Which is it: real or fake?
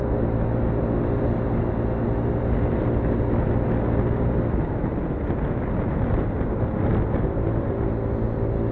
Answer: real